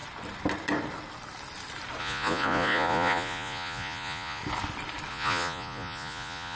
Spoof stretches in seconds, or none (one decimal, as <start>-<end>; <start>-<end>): 2.0-4.4; 5.1-6.6